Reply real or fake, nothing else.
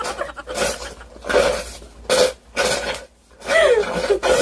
real